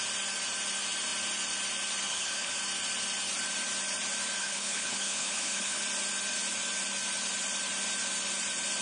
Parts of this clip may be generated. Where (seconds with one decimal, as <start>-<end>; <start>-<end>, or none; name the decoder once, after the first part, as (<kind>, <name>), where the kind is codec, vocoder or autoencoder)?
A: 2.1-2.6 (codec, HILCodec); 4.4-5.8